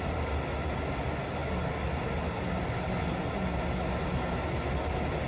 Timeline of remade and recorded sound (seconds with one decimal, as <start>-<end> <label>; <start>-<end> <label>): 0.0-5.3 recorded